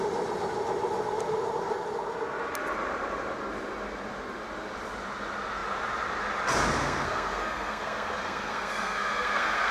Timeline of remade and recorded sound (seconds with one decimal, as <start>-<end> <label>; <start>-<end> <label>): 0.0-6.8 recorded; 6.8-9.7 remade